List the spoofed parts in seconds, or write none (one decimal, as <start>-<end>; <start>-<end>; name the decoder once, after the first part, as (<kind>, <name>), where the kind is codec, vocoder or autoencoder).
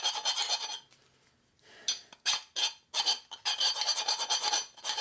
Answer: none